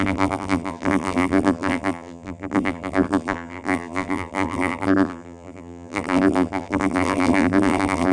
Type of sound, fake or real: fake